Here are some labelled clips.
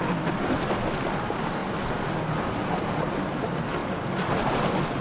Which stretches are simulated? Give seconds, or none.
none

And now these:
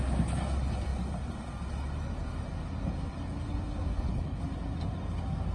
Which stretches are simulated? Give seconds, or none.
3.9-4.4 (codec, HILCodec)

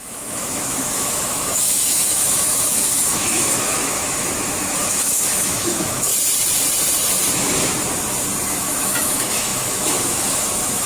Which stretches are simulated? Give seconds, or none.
0.0-6.1 (autoencoder, DAC-VAE); 8.5-10.9

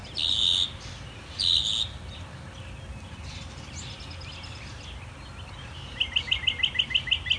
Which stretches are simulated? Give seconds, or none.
none

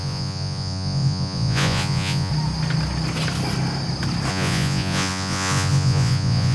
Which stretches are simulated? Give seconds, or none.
0.0-2.3 (vocoder, Vocos); 4.3-6.5

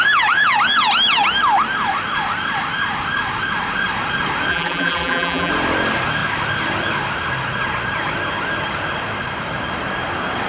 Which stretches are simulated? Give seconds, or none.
4.5-5.5 (vocoder, BigVGAN v2)